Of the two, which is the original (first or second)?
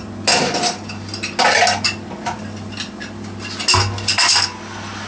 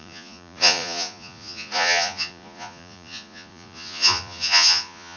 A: first